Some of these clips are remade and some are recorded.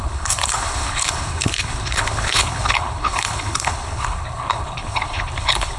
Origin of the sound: remade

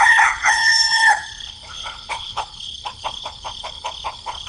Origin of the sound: remade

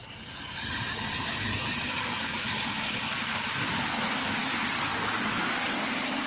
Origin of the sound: recorded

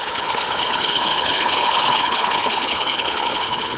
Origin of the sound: remade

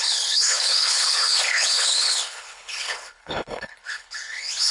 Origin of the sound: remade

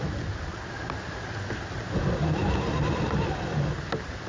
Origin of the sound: recorded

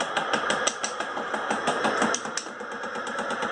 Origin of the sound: recorded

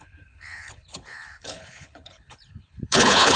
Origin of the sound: remade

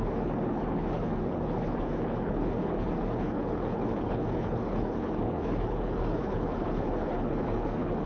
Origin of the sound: remade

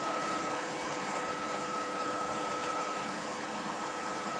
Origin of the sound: remade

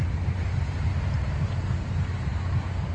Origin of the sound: recorded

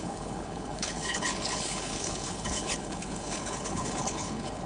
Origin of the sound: remade